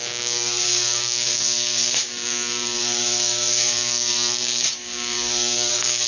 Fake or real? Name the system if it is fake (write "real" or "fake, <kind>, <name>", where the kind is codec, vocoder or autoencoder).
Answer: fake, codec, DAC